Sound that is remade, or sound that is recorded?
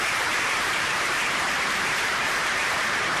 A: remade